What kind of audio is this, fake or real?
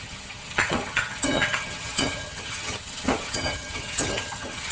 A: fake